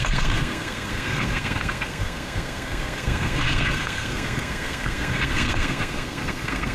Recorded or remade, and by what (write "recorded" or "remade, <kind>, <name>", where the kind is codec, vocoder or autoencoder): remade, codec, SNAC